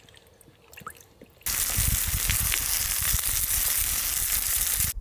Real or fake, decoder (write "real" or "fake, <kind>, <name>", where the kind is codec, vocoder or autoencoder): real